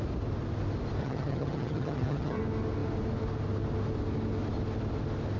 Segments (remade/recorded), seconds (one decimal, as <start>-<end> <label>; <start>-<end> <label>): 0.0-1.0 recorded; 1.0-2.4 remade; 2.4-5.4 recorded